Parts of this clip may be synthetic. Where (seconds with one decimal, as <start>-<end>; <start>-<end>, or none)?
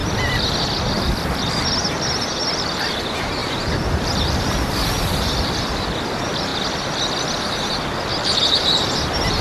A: 0.8-6.5; 8.5-9.4